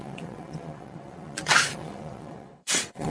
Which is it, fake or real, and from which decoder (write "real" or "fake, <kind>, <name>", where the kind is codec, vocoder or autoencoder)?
fake, vocoder, WaveNeXt